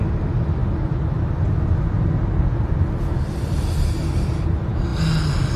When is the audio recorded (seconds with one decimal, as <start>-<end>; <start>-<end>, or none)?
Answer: 0.0-5.6